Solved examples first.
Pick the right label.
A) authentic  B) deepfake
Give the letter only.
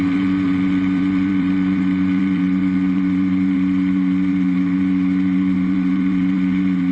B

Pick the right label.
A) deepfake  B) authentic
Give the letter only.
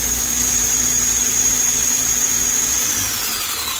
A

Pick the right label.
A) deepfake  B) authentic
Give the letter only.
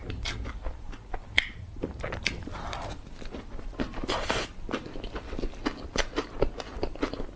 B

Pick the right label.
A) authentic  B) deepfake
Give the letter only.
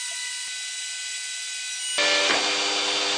A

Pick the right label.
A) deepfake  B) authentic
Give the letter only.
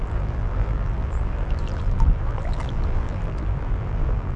A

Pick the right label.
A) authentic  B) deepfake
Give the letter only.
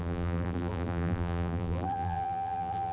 B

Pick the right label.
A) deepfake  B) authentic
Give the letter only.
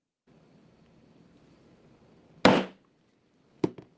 B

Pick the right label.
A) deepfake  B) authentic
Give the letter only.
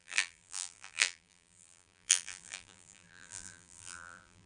A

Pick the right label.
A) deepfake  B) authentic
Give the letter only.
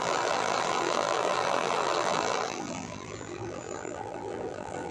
A